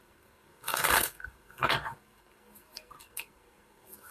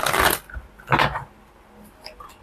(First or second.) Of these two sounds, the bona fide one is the second